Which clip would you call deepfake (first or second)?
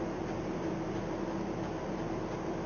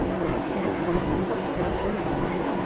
second